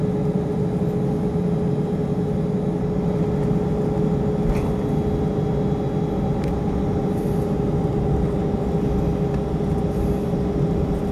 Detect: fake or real real